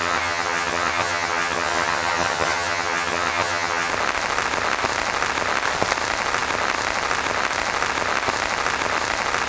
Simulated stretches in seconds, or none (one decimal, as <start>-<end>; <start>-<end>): 0.0-3.9